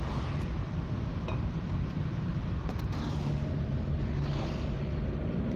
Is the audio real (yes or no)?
yes